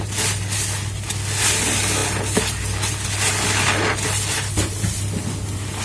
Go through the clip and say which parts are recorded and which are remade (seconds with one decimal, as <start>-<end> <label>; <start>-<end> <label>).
0.0-5.8 recorded